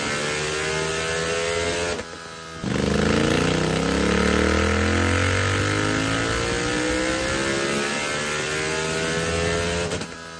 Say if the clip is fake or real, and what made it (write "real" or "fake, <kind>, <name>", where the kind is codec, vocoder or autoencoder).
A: real